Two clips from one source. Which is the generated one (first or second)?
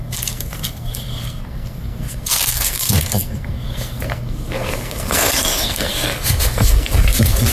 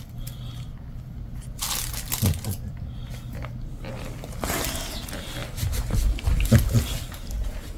first